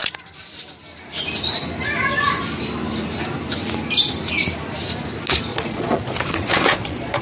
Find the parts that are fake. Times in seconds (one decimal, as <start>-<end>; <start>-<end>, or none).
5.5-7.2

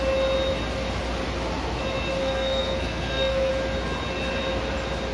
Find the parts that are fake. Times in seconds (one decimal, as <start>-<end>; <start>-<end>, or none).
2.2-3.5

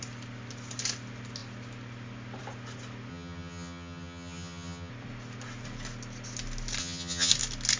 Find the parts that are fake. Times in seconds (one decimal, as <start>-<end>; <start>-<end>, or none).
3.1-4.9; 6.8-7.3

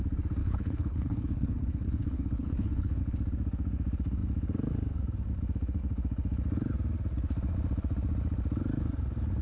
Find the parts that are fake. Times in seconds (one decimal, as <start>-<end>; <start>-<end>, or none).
0.4-3.0

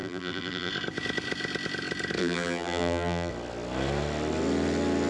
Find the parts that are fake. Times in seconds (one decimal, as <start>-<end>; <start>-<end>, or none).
0.0-0.7; 2.2-3.3